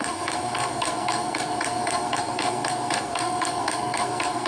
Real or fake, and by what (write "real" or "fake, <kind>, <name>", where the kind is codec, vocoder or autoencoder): fake, codec, SNAC